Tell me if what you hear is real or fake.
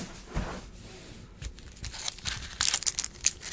real